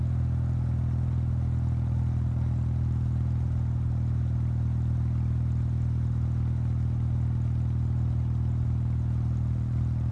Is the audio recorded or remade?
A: recorded